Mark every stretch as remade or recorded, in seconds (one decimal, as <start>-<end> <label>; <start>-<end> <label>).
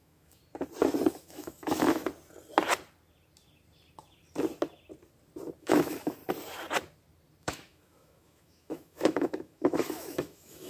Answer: 0.0-0.4 remade; 0.4-1.1 recorded; 1.1-2.0 remade; 2.0-5.6 recorded; 5.6-6.2 remade; 6.2-7.4 recorded; 7.4-10.7 remade